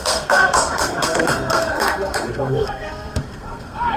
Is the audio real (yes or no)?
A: no